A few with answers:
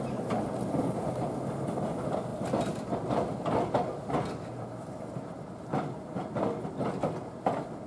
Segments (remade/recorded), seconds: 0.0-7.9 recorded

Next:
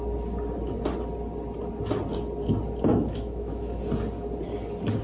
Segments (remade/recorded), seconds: 0.0-2.9 recorded; 2.9-3.8 remade; 3.8-5.0 recorded

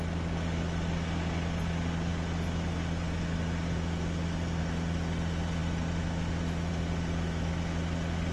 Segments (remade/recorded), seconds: 0.0-8.3 recorded